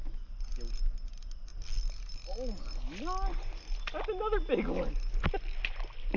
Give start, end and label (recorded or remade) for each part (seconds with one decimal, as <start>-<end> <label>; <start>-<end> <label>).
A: 0.0-6.2 recorded